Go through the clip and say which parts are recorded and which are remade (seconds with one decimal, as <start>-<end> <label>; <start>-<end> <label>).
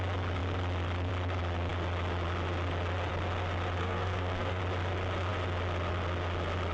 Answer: 0.0-3.8 recorded; 3.8-4.6 remade; 4.6-6.7 recorded